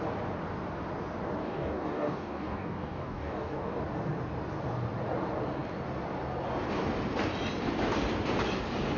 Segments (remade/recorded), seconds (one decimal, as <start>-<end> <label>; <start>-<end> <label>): 0.0-1.4 recorded; 1.4-3.8 remade; 3.8-9.0 recorded

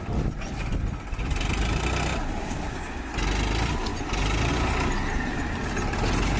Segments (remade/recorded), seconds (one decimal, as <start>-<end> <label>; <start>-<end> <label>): 0.0-2.4 recorded; 2.4-3.1 remade; 3.1-6.4 recorded

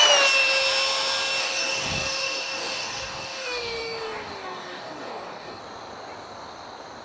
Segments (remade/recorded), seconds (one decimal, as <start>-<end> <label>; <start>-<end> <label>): 0.0-1.4 recorded; 1.4-5.6 remade; 5.6-7.0 recorded

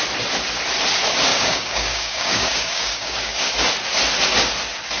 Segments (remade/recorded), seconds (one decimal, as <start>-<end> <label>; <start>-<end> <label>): 0.0-1.3 recorded; 1.3-3.5 remade; 3.5-5.0 recorded

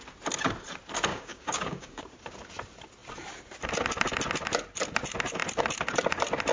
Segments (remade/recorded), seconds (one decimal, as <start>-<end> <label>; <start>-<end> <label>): 0.0-1.1 recorded; 1.1-2.0 remade; 2.0-6.5 recorded

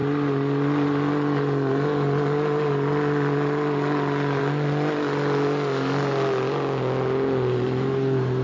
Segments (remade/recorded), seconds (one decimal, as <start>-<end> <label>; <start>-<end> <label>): 0.0-8.4 recorded